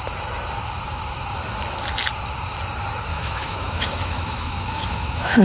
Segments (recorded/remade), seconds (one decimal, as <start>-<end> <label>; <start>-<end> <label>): 0.0-3.1 recorded; 3.1-5.4 remade